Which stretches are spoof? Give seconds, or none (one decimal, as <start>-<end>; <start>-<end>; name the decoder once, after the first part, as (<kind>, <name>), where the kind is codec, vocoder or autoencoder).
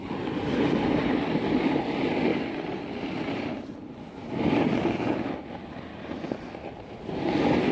2.3-4.0 (vocoder, BigVGAN v2); 5.9-6.8